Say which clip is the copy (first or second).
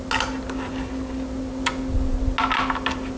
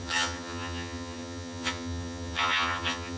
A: second